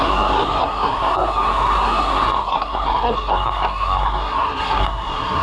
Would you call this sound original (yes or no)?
no